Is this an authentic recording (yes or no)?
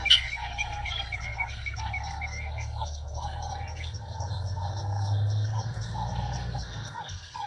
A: no